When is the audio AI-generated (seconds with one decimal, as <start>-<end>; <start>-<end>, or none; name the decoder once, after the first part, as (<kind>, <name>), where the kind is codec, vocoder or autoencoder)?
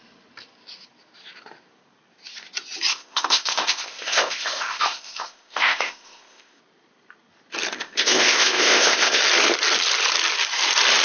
2.9-6.6 (codec, ZipCodec); 7.7-9.2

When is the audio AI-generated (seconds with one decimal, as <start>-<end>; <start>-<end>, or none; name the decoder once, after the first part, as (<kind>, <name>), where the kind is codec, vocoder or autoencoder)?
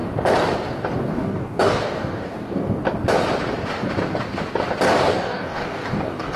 1.0-2.8 (codec, DAC); 5.1-6.4